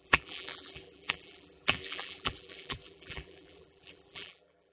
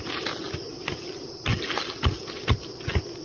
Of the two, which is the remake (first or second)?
first